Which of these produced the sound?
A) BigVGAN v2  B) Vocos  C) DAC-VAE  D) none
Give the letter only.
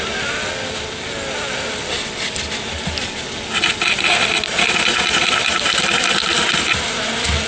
D